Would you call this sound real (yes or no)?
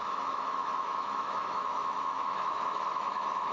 no